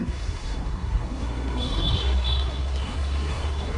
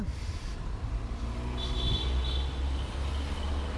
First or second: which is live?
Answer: second